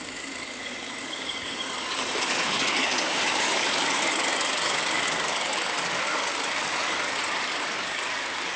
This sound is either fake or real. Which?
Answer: fake